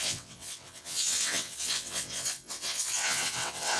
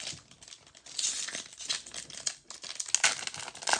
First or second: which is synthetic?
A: first